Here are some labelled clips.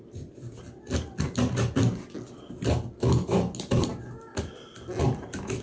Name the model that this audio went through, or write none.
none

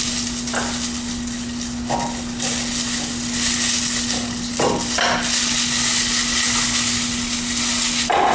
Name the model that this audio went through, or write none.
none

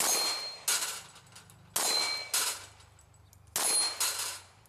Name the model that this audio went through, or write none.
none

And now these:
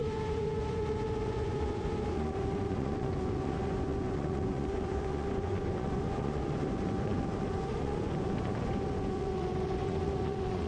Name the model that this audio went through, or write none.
vocoder, Vocos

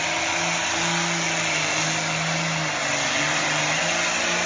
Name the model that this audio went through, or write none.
none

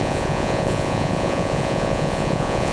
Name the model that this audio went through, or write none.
vocoder, Vocos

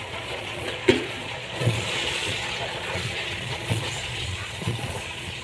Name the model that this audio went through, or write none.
vocoder, Vocos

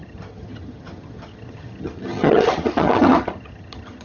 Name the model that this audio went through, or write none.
vocoder, HiFi-GAN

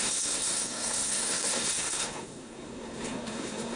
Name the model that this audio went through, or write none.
codec, SNAC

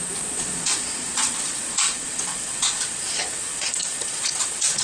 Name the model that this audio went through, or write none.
vocoder, Vocos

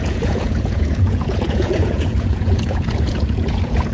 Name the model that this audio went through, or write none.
vocoder, Vocos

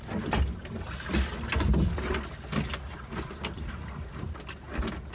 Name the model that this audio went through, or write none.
none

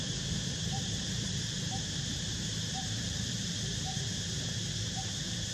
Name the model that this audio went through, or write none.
vocoder, BigVGAN v2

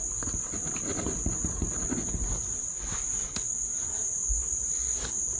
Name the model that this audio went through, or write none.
none